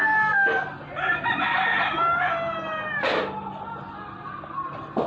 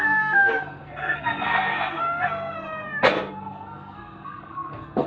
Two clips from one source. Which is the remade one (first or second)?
second